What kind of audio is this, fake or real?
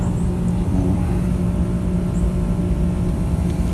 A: real